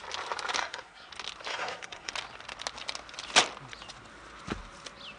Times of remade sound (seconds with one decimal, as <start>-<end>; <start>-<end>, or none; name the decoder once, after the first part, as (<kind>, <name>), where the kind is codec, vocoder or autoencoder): 0.6-1.1 (codec, SNAC); 1.5-2.1